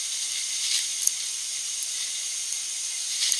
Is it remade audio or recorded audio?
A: recorded